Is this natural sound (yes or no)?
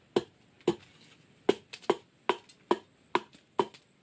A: yes